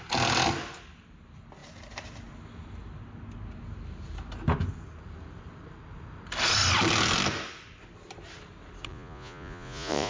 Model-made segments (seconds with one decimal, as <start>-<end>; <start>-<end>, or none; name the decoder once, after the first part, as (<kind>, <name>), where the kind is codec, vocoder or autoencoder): 8.9-10.1 (vocoder, Vocos)